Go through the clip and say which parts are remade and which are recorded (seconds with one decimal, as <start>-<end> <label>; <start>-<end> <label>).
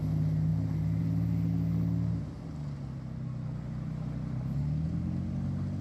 0.0-5.8 recorded